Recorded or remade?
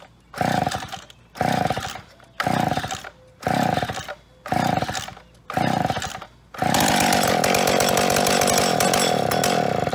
recorded